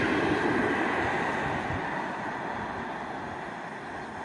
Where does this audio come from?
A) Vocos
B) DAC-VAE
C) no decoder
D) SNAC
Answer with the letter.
C